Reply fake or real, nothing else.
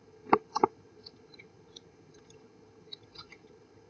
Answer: fake